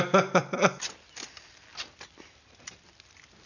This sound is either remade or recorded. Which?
recorded